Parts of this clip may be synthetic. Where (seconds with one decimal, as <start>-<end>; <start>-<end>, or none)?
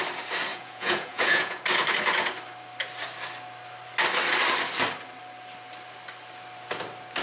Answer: 0.5-1.6